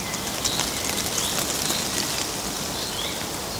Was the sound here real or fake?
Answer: real